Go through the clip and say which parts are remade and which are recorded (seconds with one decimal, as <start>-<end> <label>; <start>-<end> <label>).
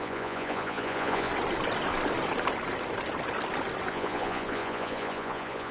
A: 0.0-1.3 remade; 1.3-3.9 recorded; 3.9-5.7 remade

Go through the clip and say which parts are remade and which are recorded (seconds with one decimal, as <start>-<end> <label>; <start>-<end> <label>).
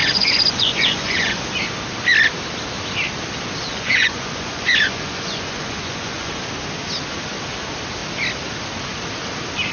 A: 0.0-1.4 remade; 1.4-3.7 recorded; 3.7-6.3 remade; 6.3-9.7 recorded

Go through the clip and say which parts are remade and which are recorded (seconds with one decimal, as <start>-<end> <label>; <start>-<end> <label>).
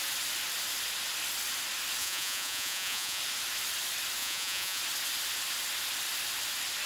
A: 0.0-2.0 recorded; 2.0-3.2 remade; 3.2-4.2 recorded; 4.2-4.8 remade; 4.8-6.9 recorded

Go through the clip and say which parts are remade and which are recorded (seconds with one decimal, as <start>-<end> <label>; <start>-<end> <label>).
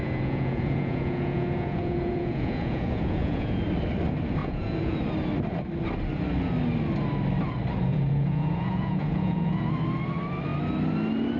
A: 0.0-3.6 remade; 3.6-4.4 recorded; 4.4-5.0 remade; 5.0-7.9 recorded; 7.9-9.7 remade; 9.7-11.4 recorded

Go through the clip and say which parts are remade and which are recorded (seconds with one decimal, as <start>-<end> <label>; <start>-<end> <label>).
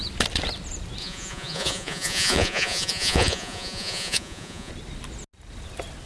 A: 0.0-1.0 recorded; 1.0-4.7 remade; 4.7-6.1 recorded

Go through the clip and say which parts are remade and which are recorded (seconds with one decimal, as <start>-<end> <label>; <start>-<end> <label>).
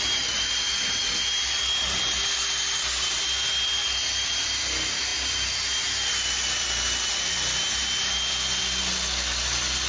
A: 0.0-9.9 recorded